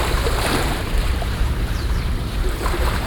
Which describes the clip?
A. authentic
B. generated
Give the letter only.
B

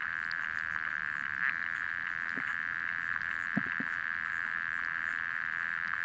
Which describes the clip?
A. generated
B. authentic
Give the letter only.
A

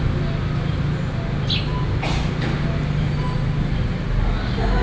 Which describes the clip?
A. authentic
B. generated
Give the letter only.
A